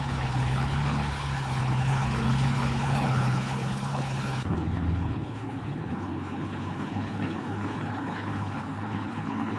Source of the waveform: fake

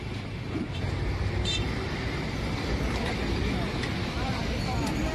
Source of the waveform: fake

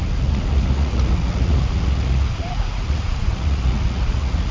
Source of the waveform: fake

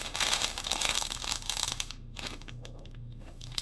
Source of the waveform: fake